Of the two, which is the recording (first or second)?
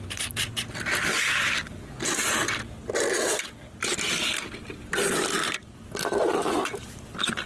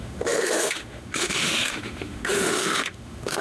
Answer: first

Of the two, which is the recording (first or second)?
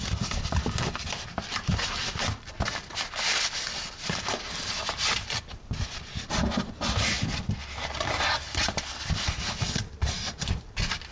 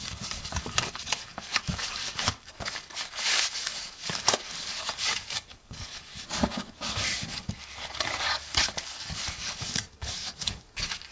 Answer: first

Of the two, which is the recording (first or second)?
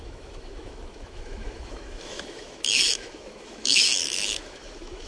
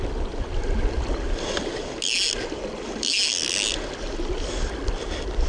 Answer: second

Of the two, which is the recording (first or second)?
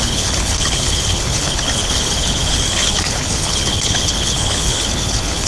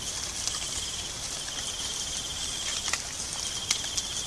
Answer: second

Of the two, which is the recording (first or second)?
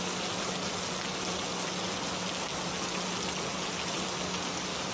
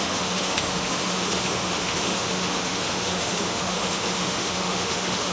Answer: first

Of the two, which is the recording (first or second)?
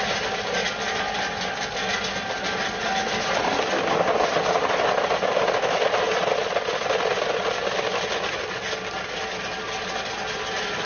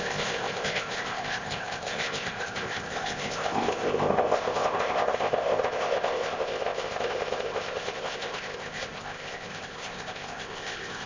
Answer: first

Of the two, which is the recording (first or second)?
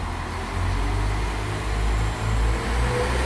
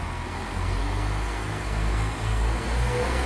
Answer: first